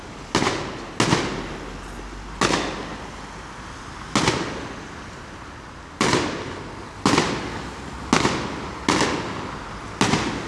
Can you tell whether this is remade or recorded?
recorded